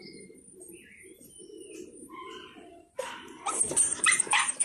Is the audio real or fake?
fake